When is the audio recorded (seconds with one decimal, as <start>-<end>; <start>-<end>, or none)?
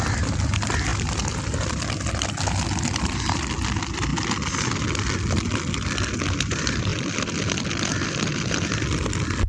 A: 4.1-4.8; 6.9-8.7